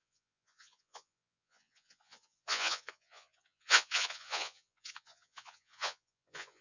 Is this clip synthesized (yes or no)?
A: yes